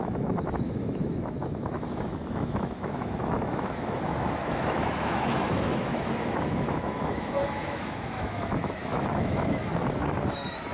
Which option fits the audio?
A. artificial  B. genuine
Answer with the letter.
A